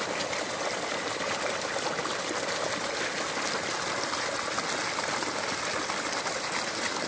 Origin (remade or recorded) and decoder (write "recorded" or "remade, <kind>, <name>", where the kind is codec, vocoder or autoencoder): recorded